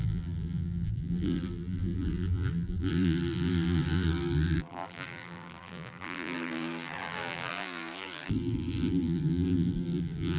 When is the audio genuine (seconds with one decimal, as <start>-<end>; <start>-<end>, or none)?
none